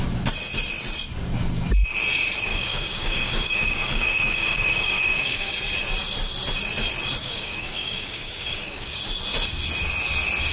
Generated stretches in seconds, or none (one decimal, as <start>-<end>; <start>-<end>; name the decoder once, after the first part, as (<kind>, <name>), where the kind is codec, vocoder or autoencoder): 2.5-5.5 (codec, DAC); 7.2-9.0